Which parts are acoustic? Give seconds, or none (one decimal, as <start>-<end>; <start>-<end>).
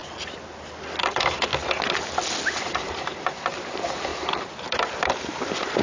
0.0-1.0; 1.5-2.5